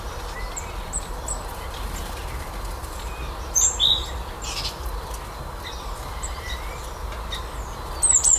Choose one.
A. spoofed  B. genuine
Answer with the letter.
B